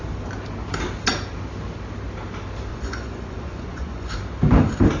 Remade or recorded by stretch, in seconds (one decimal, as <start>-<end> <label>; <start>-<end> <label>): 0.0-2.7 recorded; 2.7-4.1 remade; 4.1-5.0 recorded